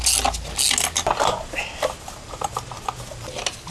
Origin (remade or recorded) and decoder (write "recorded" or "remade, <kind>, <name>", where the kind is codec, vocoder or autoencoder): recorded